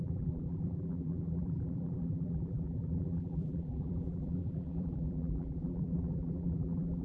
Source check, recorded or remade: remade